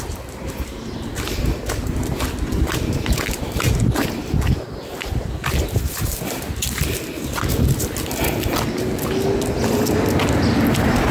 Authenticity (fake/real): real